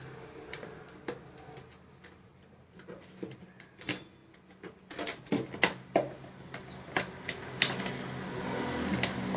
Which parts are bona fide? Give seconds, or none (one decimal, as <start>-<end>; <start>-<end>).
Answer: 0.0-9.4